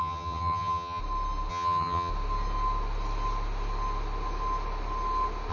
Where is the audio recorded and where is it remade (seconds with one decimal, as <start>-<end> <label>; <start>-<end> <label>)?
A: 0.0-1.0 remade; 1.0-1.5 recorded; 1.5-2.1 remade; 2.1-5.5 recorded